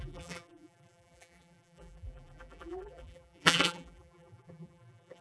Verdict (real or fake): fake